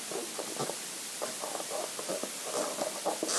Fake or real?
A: fake